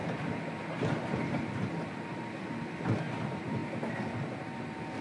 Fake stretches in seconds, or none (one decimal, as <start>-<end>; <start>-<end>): 0.0-3.6; 4.3-5.0